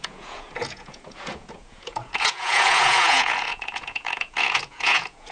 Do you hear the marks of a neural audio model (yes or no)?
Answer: yes